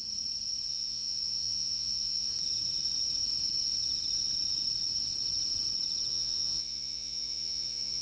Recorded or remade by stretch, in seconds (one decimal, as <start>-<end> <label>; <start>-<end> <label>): 0.0-0.7 recorded; 0.7-2.3 remade; 2.3-6.1 recorded; 6.1-8.0 remade